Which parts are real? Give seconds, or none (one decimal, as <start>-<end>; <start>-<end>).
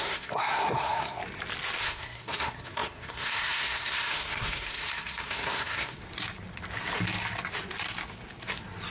1.2-1.8; 6.0-8.9